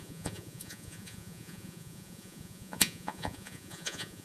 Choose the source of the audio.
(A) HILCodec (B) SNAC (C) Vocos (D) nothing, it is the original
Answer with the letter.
C